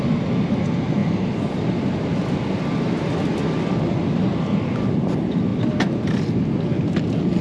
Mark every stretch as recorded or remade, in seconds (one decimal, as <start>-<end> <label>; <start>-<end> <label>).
0.0-7.4 recorded